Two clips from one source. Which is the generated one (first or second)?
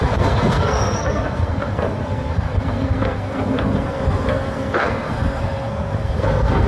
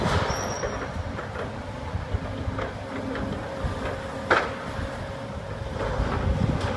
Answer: first